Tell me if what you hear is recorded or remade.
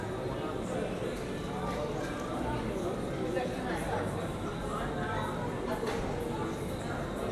recorded